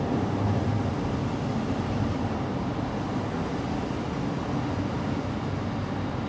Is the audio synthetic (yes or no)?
no